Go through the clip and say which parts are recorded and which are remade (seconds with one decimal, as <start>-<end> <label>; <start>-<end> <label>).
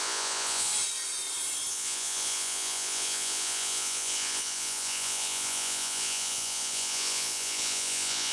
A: 0.0-0.7 remade; 0.7-1.7 recorded; 1.7-8.3 remade